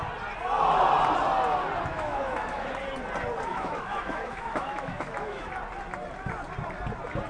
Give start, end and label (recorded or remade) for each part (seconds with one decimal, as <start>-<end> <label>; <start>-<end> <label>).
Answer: 0.0-1.9 recorded; 1.9-2.8 remade; 2.8-3.5 recorded; 3.5-5.5 remade; 5.5-7.3 recorded